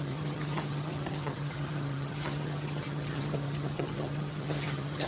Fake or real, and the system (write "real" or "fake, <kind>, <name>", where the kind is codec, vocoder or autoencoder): fake, vocoder, HiFi-GAN